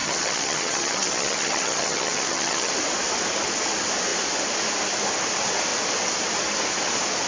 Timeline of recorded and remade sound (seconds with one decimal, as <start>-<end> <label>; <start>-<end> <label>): 0.0-2.7 remade; 2.7-7.3 recorded